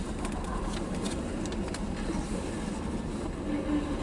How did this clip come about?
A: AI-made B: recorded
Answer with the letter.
B